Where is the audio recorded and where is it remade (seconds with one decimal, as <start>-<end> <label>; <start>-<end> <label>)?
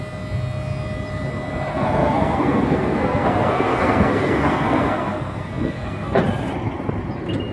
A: 0.0-1.7 recorded; 1.7-6.2 remade; 6.2-7.5 recorded